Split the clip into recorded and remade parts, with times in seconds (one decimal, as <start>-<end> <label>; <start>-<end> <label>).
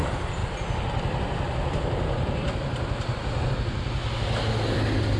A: 0.0-5.2 recorded